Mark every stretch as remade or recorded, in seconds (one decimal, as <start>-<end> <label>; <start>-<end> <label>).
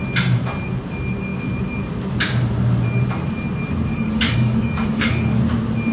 0.0-3.9 recorded; 3.9-5.4 remade; 5.4-5.9 recorded